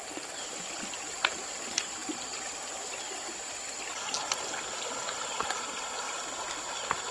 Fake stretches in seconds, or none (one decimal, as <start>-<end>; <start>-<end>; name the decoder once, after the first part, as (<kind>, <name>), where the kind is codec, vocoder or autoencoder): none